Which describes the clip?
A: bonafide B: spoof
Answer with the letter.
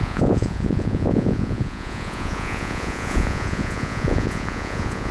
B